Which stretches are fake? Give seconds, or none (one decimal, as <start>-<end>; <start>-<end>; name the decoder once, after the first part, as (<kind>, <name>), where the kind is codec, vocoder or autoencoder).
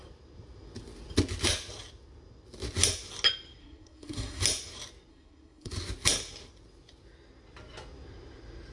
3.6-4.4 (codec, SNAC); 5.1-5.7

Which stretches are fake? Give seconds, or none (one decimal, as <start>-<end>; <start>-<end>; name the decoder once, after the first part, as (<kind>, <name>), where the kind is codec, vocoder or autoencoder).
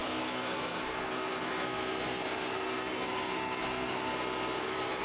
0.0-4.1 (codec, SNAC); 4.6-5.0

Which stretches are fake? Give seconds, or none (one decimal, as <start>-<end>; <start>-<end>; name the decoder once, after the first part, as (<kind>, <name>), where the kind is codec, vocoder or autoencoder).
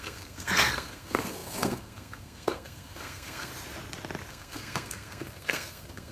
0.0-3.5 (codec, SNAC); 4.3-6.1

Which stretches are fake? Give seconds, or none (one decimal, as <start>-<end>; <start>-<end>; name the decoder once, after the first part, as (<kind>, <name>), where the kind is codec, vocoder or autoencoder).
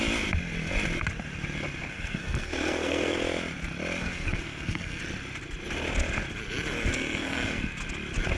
1.8-3.2 (codec, SNAC); 4.0-5.0; 6.9-7.8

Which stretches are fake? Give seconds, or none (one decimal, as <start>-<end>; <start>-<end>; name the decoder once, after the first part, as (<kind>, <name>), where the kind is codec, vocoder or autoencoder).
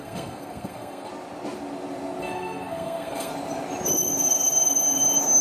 0.0-1.1 (codec, SNAC); 2.2-3.3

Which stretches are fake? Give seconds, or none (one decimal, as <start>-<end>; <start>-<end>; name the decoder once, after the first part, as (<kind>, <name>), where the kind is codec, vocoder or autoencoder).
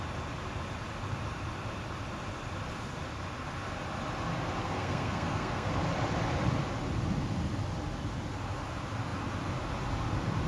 4.6-5.7 (codec, SNAC)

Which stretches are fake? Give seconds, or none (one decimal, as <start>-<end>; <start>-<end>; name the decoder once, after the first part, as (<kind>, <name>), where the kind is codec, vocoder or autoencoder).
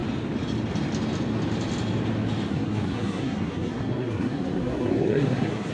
2.5-5.7 (codec, SNAC)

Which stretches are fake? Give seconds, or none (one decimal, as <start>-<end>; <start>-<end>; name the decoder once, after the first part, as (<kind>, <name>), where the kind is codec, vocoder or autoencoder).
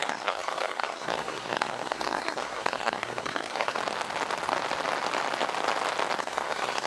0.0-3.8 (codec, SNAC); 6.2-6.9